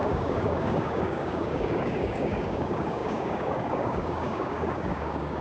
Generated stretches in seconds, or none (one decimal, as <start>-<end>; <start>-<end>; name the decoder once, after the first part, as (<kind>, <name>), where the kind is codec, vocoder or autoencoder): 0.0-5.4 (codec, DAC)